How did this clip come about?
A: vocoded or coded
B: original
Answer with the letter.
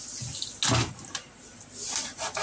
B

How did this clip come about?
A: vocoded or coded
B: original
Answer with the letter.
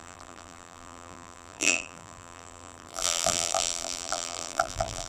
A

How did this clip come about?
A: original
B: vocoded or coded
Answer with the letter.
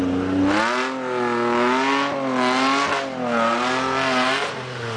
A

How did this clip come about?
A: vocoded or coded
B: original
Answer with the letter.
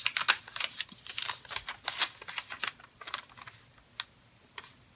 B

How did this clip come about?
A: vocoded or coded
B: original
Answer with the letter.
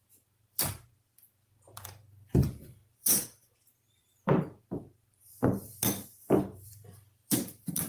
A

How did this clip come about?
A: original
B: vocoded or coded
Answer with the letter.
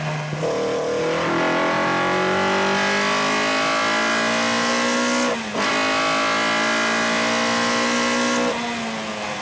A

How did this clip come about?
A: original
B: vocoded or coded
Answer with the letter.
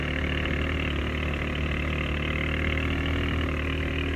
A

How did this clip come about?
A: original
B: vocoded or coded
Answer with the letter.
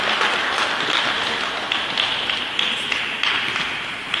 A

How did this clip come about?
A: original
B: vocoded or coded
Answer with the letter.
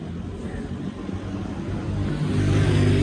A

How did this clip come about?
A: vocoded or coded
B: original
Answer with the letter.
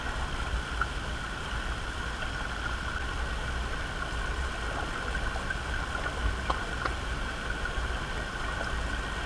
B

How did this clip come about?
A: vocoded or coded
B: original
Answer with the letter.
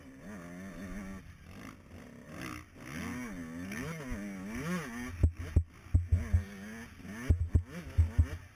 B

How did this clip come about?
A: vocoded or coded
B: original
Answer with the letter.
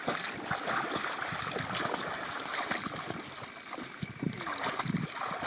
B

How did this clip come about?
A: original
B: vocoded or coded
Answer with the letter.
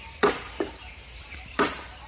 B